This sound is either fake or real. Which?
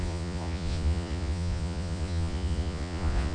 fake